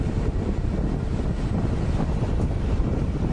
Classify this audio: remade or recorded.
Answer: remade